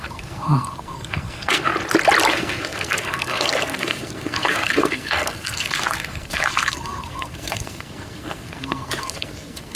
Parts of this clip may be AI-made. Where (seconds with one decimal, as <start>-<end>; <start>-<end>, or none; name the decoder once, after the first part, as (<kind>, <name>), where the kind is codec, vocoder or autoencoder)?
0.0-1.7 (codec, SNAC); 2.3-9.8